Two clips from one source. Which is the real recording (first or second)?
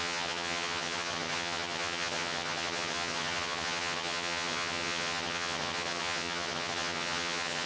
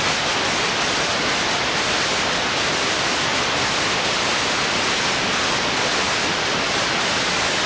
second